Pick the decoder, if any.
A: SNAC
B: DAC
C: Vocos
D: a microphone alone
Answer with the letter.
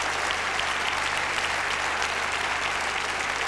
D